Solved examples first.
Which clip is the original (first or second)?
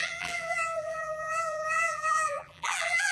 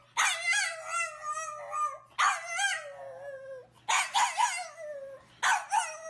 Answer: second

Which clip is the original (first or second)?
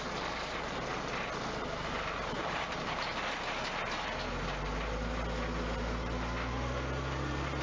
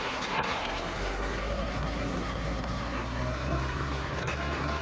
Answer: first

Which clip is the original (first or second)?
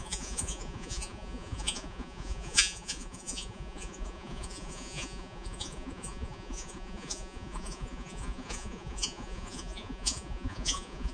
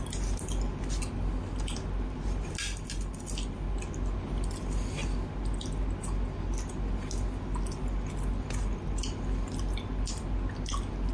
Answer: second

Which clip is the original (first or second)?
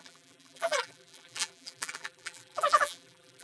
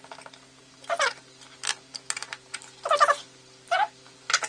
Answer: second